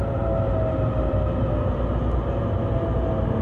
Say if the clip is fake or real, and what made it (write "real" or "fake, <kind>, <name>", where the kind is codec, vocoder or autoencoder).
real